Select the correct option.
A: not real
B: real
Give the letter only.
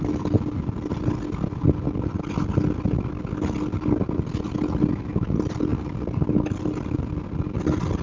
B